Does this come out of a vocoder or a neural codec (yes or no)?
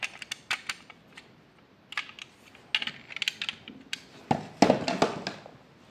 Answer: no